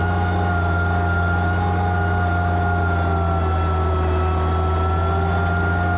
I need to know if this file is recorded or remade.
recorded